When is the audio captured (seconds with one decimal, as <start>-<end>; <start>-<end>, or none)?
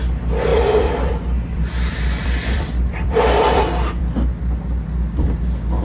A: 0.0-0.5; 4.0-5.8